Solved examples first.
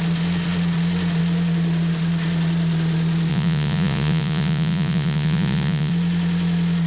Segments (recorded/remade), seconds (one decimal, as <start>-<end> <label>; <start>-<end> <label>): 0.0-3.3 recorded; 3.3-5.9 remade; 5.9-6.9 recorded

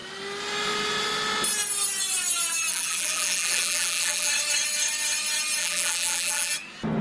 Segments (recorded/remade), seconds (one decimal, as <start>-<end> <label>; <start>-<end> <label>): 0.0-2.7 recorded; 2.7-4.3 remade; 4.3-5.6 recorded; 5.6-6.5 remade; 6.5-7.0 recorded

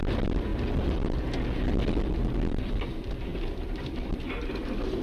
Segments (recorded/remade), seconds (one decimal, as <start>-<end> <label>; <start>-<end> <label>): 0.0-5.0 recorded

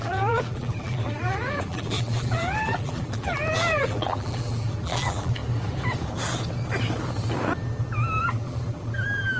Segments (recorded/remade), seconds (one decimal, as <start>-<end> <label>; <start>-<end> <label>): 0.0-5.4 remade; 5.4-8.2 recorded; 8.2-9.4 remade

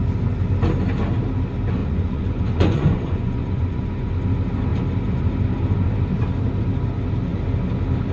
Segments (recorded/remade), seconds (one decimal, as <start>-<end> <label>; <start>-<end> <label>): 0.0-1.8 recorded; 1.8-4.1 remade; 4.1-8.1 recorded

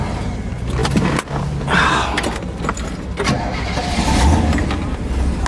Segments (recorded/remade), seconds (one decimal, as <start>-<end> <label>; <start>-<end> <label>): 0.0-5.5 recorded

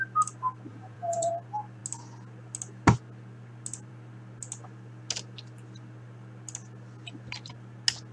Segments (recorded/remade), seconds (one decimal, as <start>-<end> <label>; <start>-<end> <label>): 0.0-0.7 recorded; 0.7-1.3 remade; 1.3-8.1 recorded

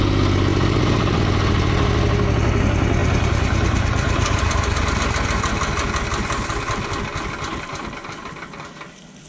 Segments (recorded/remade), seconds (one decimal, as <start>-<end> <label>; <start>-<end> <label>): 0.0-0.5 recorded; 0.5-1.2 remade; 1.2-3.0 recorded; 3.0-4.8 remade; 4.8-7.5 recorded; 7.5-8.2 remade; 8.2-9.3 recorded